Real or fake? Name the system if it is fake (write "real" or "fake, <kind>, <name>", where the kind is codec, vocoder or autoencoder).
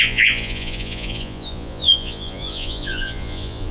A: fake, vocoder, Vocos